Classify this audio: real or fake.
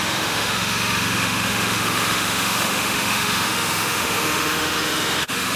fake